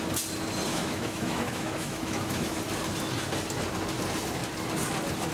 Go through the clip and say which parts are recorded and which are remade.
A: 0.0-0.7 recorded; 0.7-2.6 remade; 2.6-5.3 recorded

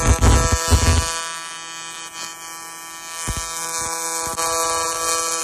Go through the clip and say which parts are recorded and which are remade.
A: 0.0-5.4 recorded